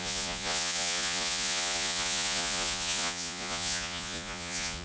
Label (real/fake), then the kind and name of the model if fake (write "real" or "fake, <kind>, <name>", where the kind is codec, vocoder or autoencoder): fake, vocoder, Vocos